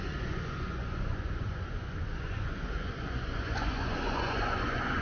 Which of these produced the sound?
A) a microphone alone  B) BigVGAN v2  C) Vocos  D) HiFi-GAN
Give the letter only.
C